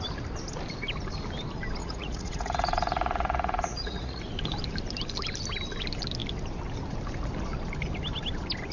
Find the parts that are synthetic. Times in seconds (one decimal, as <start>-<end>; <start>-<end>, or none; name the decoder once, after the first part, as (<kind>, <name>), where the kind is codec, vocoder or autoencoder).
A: 1.8-4.2 (vocoder, Vocos)